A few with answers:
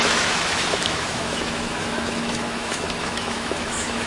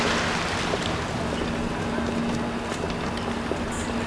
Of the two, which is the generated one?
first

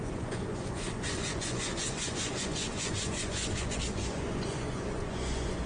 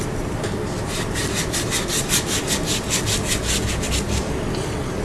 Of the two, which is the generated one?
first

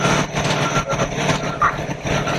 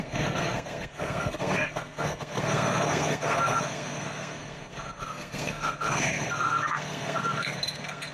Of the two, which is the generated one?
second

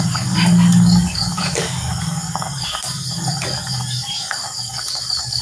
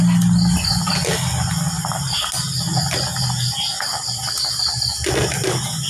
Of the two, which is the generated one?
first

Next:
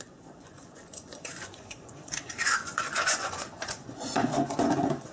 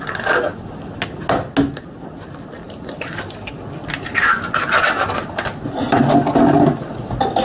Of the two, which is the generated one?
first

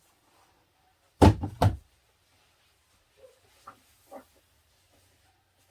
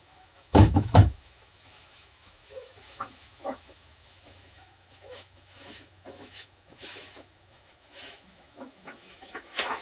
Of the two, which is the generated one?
second